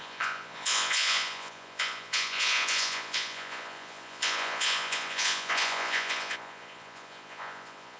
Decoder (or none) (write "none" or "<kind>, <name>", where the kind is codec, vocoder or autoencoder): vocoder, Vocos